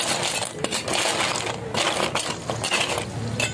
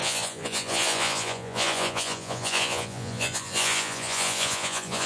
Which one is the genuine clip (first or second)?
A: first